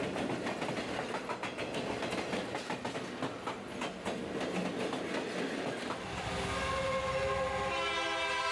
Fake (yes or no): no